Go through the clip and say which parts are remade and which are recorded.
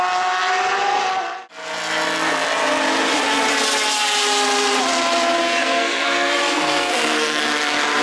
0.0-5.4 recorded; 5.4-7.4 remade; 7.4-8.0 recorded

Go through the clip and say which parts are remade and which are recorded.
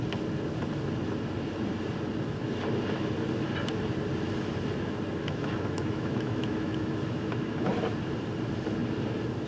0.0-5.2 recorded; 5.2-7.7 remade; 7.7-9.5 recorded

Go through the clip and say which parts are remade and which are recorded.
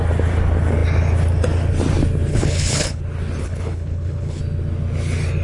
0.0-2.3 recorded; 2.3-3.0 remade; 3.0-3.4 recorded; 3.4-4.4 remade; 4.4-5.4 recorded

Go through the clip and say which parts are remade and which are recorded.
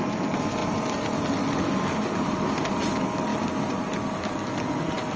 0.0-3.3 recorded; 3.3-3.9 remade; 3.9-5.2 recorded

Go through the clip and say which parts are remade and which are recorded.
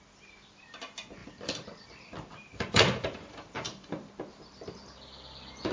0.0-1.2 recorded; 1.2-4.1 remade; 4.1-5.7 recorded